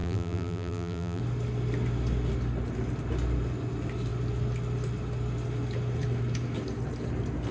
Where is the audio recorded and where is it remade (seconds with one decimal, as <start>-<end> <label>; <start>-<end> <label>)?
0.0-1.2 remade; 1.2-7.5 recorded